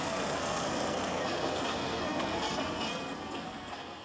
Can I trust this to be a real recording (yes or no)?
no